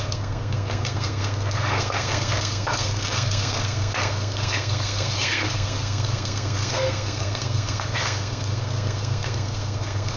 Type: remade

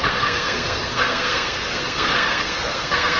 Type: remade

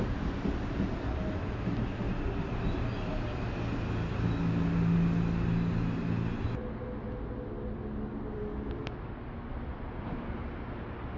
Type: recorded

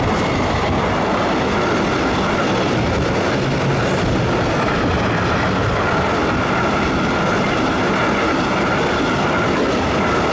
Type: recorded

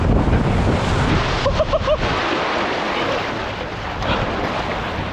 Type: recorded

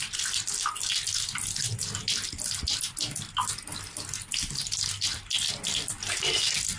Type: recorded